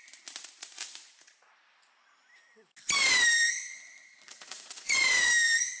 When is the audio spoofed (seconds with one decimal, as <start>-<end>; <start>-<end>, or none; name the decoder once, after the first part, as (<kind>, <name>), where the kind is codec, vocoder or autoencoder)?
4.3-5.3 (vocoder, Vocos)